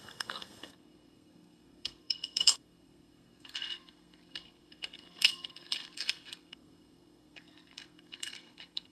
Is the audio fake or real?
fake